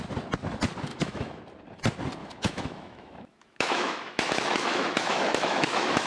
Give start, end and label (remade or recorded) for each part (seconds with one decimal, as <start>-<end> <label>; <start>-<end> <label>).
0.0-0.9 recorded; 0.9-1.4 remade; 1.4-2.2 recorded; 2.2-6.1 remade

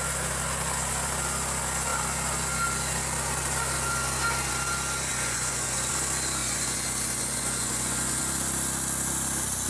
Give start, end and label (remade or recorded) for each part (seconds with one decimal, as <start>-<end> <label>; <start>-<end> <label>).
0.0-5.1 recorded; 5.1-5.9 remade; 5.9-6.4 recorded; 6.4-8.2 remade; 8.2-9.7 recorded

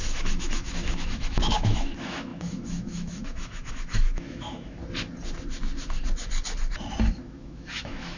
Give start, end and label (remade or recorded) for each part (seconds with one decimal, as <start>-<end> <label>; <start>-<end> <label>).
0.0-4.8 remade; 4.8-7.1 recorded; 7.1-8.2 remade

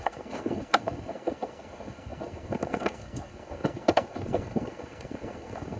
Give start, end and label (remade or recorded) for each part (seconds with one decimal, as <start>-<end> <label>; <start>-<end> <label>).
0.0-5.8 remade

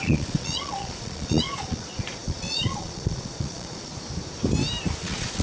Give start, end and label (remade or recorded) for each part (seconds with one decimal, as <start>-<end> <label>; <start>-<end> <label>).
0.0-3.9 remade; 3.9-5.0 recorded; 5.0-5.4 remade